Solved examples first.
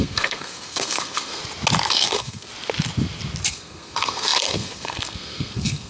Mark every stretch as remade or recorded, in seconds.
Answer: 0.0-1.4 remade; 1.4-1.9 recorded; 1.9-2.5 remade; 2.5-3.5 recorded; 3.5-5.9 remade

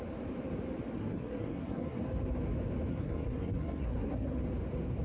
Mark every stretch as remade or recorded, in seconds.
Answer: 0.0-1.0 recorded; 1.0-2.0 remade; 2.0-2.9 recorded; 2.9-4.4 remade; 4.4-5.0 recorded

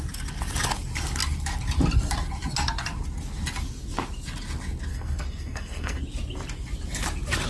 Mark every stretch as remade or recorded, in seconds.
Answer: 0.0-4.9 recorded; 4.9-6.0 remade; 6.0-7.5 recorded

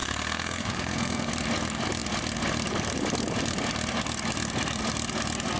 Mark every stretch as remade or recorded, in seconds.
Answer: 0.0-1.3 remade; 1.3-5.6 recorded

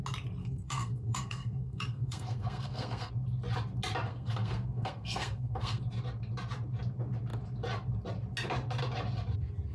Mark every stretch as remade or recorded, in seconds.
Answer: 0.0-0.4 recorded; 0.4-3.1 remade; 3.1-4.1 recorded; 4.1-5.8 remade; 5.8-9.7 recorded

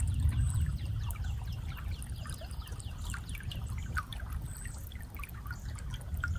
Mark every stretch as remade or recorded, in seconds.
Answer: 0.0-6.4 recorded